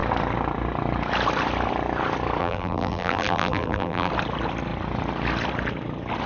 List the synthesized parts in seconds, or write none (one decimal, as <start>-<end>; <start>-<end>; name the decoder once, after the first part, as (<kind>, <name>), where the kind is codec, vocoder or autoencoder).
2.4-4.1 (vocoder, BigVGAN v2)